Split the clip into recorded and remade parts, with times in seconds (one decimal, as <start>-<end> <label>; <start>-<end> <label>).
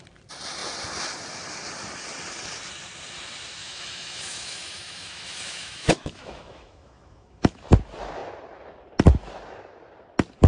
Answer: 0.0-3.6 recorded; 3.6-7.6 remade; 7.6-10.5 recorded